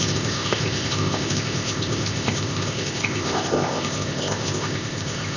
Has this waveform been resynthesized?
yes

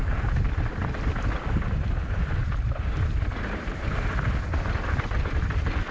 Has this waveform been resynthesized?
yes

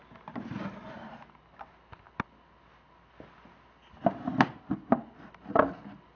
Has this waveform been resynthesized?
no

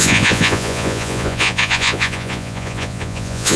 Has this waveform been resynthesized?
yes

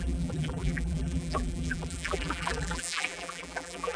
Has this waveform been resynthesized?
yes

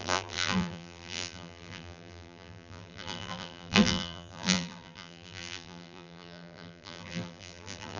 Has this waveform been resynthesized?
yes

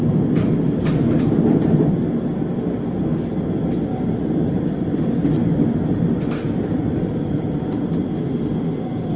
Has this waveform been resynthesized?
no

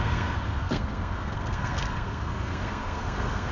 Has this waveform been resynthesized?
yes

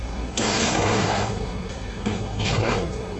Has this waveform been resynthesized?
yes